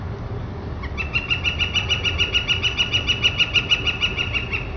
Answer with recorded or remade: recorded